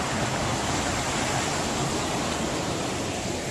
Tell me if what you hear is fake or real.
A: real